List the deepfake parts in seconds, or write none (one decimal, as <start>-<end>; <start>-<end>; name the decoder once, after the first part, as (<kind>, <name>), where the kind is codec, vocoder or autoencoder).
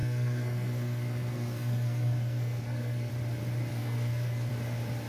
0.0-3.1 (codec, SNAC); 3.7-4.5